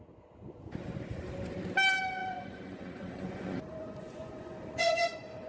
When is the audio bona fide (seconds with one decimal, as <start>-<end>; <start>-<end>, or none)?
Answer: 0.0-2.2